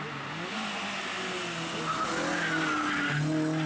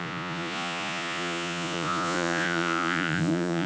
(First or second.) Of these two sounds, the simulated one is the second